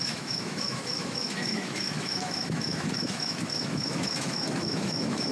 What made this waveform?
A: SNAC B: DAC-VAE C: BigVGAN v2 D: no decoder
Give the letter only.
B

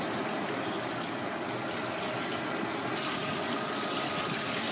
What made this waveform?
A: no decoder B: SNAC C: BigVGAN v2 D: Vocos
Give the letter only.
A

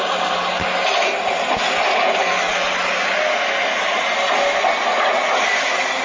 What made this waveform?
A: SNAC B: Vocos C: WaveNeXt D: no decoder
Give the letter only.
D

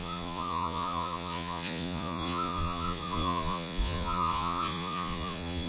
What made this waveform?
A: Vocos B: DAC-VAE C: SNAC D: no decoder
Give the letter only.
A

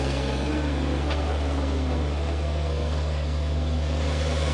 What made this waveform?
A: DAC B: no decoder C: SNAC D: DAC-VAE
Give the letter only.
C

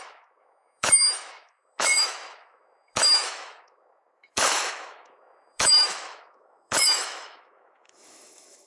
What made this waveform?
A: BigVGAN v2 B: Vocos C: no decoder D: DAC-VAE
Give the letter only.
D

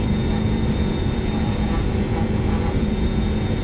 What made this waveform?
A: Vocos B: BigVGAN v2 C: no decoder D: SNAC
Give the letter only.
A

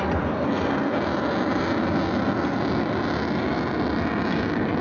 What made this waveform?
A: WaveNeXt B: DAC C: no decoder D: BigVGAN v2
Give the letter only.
C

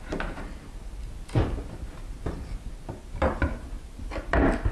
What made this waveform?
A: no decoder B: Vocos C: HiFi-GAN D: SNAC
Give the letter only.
A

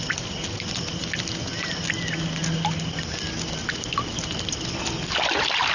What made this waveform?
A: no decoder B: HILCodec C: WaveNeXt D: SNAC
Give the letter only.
A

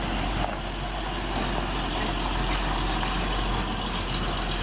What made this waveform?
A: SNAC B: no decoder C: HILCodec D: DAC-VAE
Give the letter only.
B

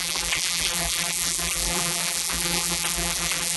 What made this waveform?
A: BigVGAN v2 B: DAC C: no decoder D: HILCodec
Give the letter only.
A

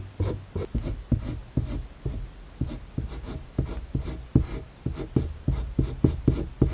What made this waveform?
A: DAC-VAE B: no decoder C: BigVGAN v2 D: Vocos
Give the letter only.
B